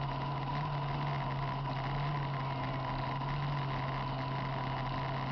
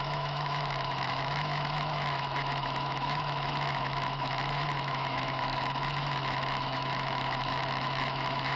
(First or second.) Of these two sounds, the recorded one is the first